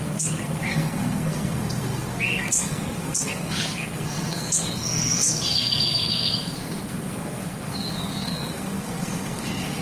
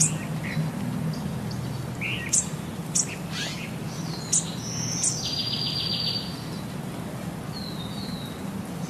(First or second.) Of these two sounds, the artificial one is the first